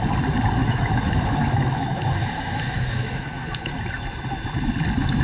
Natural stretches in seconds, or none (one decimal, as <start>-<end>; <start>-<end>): 0.0-0.6; 3.7-5.2